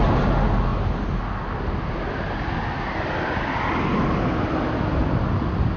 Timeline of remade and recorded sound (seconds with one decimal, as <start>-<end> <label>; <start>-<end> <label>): 0.0-5.8 recorded